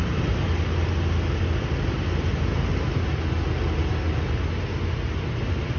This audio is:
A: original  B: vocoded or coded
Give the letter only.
A